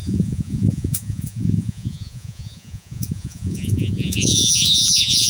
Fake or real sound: fake